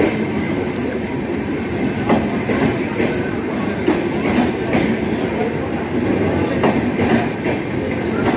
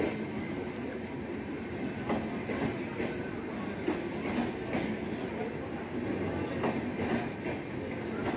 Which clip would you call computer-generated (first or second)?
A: first